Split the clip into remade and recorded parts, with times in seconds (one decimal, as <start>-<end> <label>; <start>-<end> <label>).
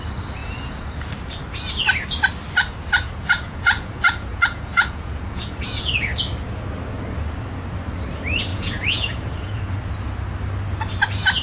0.0-0.4 recorded; 0.4-1.1 remade; 1.1-2.6 recorded; 2.6-5.9 remade; 5.9-8.5 recorded; 8.5-9.8 remade; 9.8-11.4 recorded